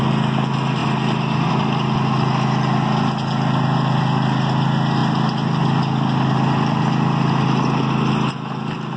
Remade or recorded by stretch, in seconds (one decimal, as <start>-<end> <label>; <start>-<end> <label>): 0.0-9.0 recorded